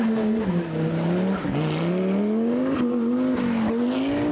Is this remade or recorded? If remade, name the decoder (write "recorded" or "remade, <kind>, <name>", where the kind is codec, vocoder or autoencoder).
recorded